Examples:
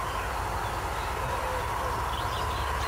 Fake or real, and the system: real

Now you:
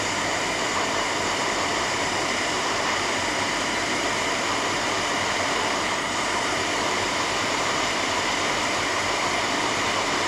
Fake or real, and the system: fake, vocoder, BigVGAN v2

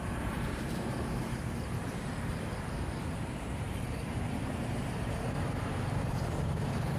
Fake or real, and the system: fake, vocoder, BigVGAN v2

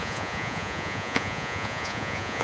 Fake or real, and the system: fake, vocoder, Vocos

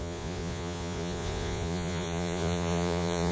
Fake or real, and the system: fake, vocoder, Vocos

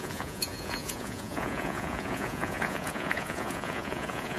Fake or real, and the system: fake, vocoder, Vocos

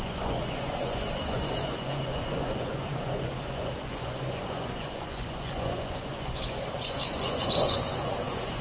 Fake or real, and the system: fake, vocoder, Vocos